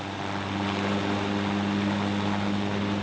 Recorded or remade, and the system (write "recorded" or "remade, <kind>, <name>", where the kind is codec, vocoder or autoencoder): recorded